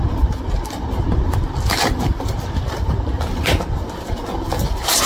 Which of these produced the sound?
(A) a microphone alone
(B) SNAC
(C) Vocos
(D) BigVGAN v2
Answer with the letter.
D